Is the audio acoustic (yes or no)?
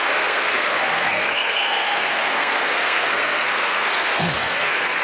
no